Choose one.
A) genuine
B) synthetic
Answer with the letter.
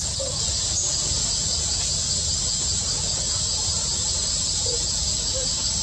B